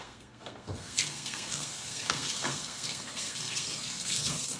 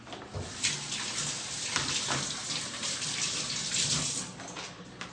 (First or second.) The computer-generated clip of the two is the first